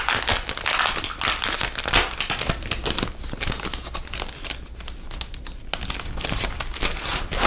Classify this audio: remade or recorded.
recorded